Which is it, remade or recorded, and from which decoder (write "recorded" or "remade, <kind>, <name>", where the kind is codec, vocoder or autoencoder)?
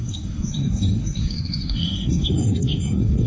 remade, codec, SNAC